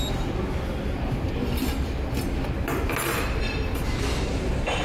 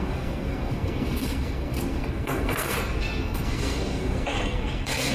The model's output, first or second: second